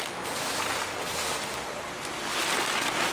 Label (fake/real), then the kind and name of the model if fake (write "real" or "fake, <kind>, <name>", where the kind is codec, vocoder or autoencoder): real